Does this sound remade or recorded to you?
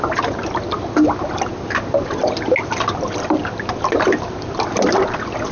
recorded